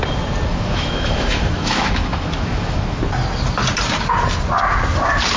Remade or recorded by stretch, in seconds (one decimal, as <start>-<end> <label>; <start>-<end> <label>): 0.0-0.5 recorded; 0.5-3.0 remade; 3.0-5.4 recorded